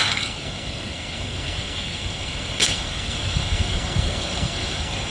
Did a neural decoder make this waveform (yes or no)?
yes